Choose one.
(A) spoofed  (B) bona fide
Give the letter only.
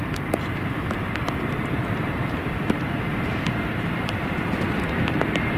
A